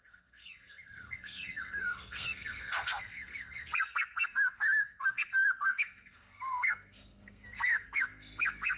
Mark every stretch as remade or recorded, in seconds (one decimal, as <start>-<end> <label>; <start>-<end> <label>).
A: 0.0-8.8 remade